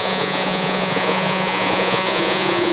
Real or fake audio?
fake